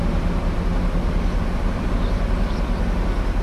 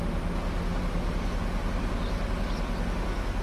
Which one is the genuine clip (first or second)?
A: second